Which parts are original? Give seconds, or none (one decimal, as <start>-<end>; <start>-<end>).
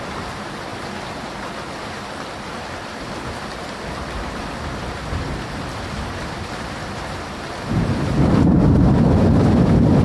none